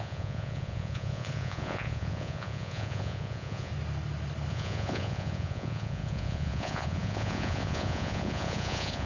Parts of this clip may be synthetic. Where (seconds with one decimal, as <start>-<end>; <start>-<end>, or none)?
0.0-3.7; 4.5-9.1